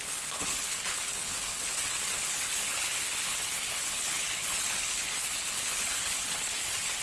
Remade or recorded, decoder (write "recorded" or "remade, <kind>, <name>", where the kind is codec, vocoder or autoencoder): remade, codec, HILCodec